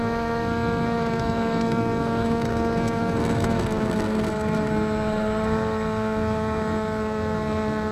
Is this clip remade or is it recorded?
remade